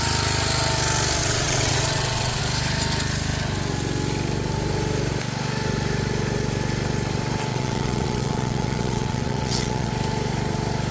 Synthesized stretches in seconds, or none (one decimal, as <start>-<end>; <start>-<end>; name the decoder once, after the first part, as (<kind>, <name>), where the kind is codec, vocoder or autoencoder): 1.2-2.4 (vocoder, WaveNeXt); 7.5-9.9